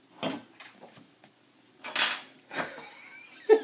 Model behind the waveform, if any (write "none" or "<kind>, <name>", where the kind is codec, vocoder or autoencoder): none